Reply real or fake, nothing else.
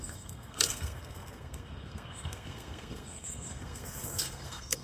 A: fake